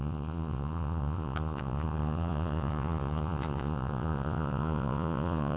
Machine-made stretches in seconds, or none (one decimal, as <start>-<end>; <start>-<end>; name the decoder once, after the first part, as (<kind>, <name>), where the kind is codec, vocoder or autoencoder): 0.0-5.6 (vocoder, Vocos)